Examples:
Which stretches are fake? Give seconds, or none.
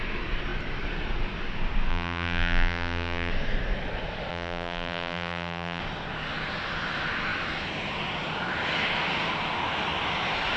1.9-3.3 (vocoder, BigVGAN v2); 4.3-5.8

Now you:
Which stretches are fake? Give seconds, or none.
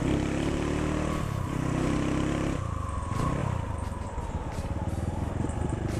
3.4-6.0 (vocoder, BigVGAN v2)